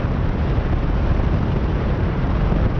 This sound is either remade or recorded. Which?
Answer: recorded